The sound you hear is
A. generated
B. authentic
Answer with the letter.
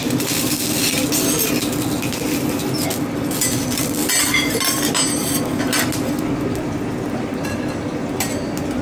B